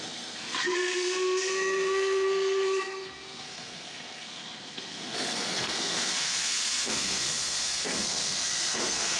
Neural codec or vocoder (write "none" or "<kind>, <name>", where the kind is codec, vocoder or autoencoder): codec, SNAC